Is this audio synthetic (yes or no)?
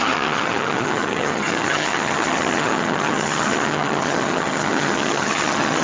yes